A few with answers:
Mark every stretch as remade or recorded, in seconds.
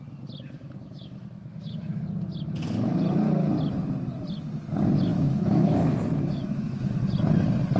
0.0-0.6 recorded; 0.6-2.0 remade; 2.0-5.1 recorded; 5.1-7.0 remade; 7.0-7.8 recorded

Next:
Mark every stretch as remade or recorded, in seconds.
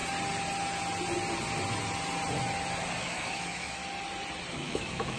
0.0-3.0 recorded; 3.0-3.8 remade; 3.8-4.5 recorded; 4.5-5.2 remade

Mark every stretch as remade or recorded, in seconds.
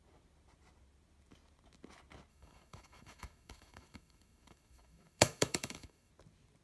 0.0-2.3 recorded; 2.3-6.1 remade; 6.1-6.6 recorded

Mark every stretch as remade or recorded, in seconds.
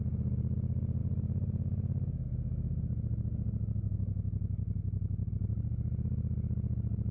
0.0-1.0 recorded; 1.0-5.3 remade; 5.3-7.1 recorded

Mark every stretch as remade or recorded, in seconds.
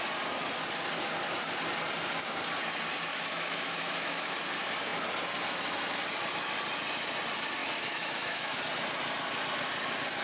0.0-3.1 recorded; 3.1-4.4 remade; 4.4-7.6 recorded; 7.6-8.6 remade; 8.6-10.2 recorded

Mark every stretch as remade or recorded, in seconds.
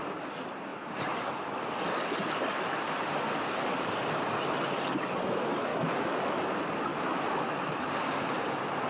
0.0-5.7 recorded; 5.7-6.5 remade; 6.5-6.9 recorded; 6.9-7.9 remade; 7.9-8.9 recorded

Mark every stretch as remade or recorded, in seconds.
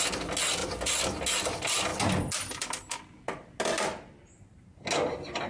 0.0-5.5 recorded